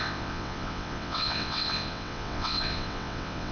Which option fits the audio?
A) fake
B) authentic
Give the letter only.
A